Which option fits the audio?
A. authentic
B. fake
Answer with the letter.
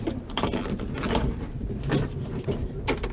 A